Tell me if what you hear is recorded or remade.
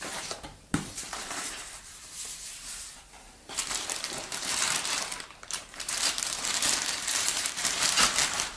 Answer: remade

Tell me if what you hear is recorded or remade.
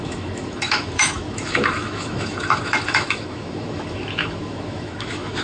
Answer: remade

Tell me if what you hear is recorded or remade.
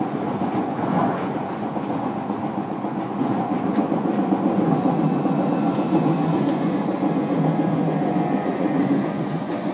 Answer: remade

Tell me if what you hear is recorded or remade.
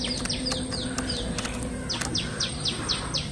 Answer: recorded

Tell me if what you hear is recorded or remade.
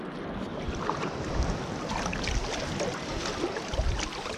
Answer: recorded